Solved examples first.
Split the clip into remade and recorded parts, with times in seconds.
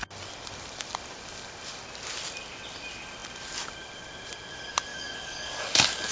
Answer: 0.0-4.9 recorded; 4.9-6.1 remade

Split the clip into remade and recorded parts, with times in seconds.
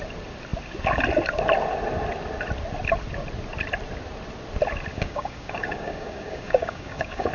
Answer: 0.0-4.9 recorded; 4.9-7.3 remade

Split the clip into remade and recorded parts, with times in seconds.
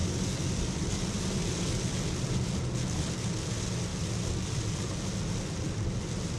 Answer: 0.0-6.4 recorded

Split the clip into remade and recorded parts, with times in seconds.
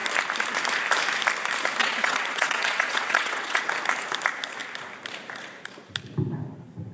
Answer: 0.0-1.8 recorded; 1.8-3.7 remade; 3.7-6.9 recorded